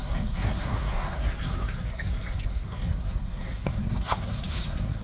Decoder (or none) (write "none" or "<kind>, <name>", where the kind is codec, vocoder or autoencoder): codec, SNAC